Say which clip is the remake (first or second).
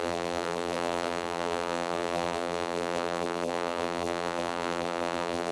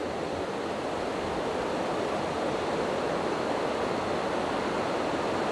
first